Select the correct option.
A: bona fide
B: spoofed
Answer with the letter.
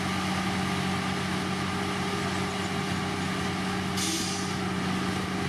A